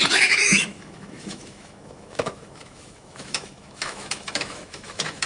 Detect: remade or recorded remade